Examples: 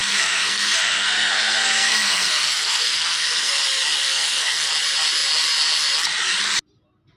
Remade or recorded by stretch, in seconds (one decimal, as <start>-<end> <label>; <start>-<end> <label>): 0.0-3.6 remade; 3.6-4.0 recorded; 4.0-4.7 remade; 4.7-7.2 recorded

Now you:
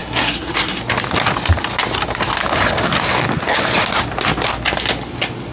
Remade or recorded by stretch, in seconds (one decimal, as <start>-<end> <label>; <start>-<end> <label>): 0.0-0.8 remade; 0.8-5.5 recorded

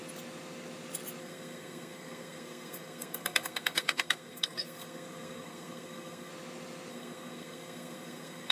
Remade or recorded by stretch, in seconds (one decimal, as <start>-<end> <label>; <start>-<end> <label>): 0.0-1.2 recorded; 1.2-6.3 remade; 6.3-6.9 recorded; 6.9-8.5 remade